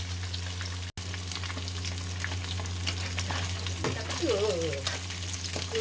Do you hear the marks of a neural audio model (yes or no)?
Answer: no